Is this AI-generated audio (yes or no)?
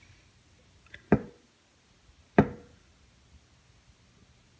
no